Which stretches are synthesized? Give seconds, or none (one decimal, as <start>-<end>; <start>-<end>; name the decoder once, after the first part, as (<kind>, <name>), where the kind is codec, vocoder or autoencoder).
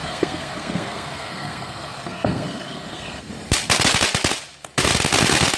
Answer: 0.0-3.3 (codec, SNAC)